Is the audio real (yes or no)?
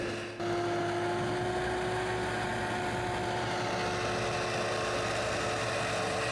yes